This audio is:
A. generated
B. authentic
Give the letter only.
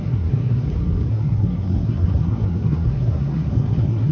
A